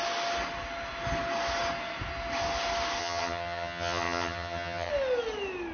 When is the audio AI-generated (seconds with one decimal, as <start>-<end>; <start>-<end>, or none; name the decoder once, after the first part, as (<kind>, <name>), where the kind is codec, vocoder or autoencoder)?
3.0-4.9 (vocoder, HiFi-GAN)